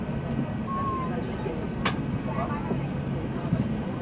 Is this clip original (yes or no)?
yes